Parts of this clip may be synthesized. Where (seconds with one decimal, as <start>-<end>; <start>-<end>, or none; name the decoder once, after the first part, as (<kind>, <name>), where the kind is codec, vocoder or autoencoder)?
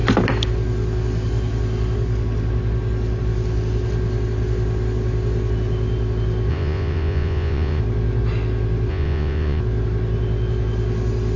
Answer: 6.5-7.8 (vocoder, Vocos); 8.9-9.6